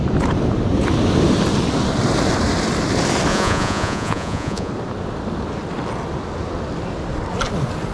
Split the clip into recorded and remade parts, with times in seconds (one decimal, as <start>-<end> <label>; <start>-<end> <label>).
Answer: 0.0-3.3 recorded; 3.3-4.7 remade; 4.7-7.9 recorded

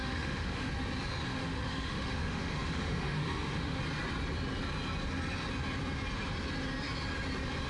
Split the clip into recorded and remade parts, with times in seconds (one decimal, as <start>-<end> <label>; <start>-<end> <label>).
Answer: 0.0-0.7 remade; 0.7-1.3 recorded; 1.3-3.8 remade; 3.8-7.7 recorded

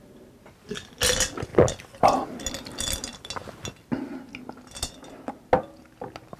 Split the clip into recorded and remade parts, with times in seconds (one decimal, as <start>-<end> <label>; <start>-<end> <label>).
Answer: 0.0-6.4 recorded

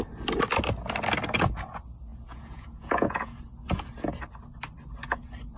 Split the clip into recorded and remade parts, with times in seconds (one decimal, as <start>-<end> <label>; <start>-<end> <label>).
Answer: 0.0-2.1 recorded; 2.1-3.4 remade; 3.4-5.6 recorded

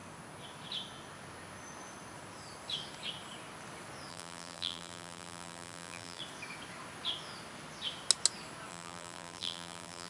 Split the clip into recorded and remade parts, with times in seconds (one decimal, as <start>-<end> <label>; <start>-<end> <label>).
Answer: 0.0-4.1 recorded; 4.1-6.2 remade; 6.2-8.7 recorded; 8.7-10.1 remade